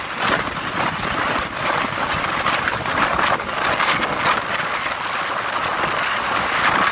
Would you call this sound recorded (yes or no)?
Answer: yes